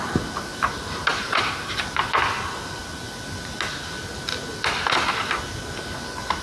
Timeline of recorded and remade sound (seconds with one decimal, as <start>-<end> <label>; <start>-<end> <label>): 0.0-1.1 recorded; 1.1-1.8 remade; 1.8-6.4 recorded